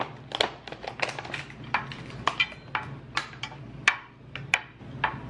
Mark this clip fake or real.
real